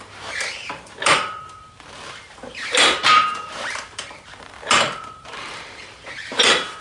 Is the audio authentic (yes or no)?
no